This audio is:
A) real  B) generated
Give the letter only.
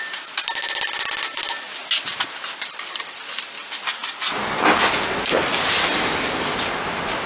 A